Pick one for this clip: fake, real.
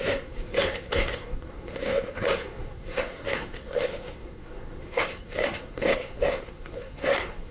fake